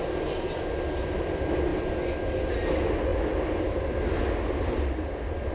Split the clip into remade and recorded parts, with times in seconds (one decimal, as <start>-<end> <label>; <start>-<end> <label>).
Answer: 0.0-5.5 recorded